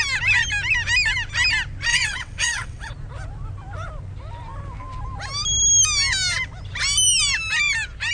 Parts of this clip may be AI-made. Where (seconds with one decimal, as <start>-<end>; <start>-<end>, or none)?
1.9-2.9